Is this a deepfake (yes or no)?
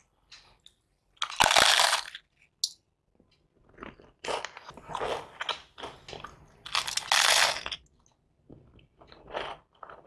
no